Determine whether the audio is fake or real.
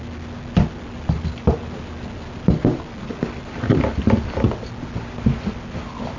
real